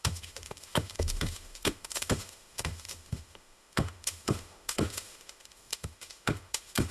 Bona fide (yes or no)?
no